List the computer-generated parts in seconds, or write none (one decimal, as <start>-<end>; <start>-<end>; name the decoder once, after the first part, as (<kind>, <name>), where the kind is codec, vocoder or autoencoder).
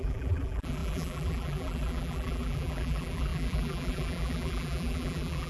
0.0-5.5 (vocoder, BigVGAN v2)